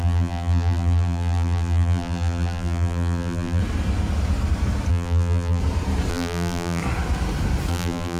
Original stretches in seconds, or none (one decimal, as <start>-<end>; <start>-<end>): 3.6-4.9; 5.6-6.1; 6.8-7.7